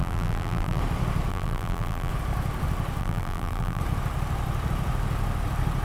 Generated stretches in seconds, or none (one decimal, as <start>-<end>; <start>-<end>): 0.0-0.8; 1.3-2.1; 3.0-3.8